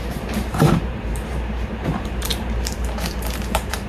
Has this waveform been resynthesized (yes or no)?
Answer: yes